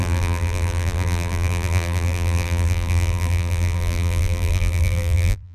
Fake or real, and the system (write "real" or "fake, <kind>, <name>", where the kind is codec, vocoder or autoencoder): fake, vocoder, BigVGAN v2